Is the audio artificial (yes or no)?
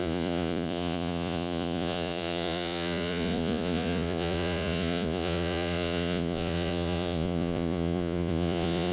yes